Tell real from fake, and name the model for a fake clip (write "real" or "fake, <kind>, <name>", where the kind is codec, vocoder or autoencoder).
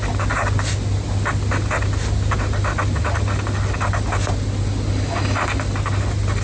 real